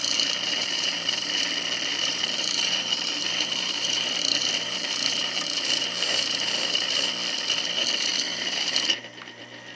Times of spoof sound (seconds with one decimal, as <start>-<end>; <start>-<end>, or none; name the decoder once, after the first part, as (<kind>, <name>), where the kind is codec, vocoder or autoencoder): 0.0-1.4 (vocoder, BigVGAN v2); 1.9-7.1; 8.3-9.4